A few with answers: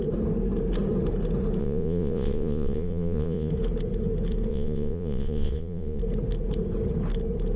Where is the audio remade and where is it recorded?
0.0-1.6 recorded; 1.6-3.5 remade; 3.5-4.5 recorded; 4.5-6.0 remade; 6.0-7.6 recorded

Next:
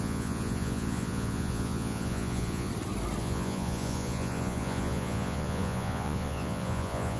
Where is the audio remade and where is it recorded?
0.0-2.7 remade; 2.7-3.2 recorded; 3.2-7.2 remade